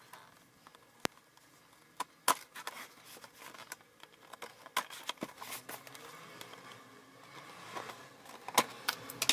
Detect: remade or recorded recorded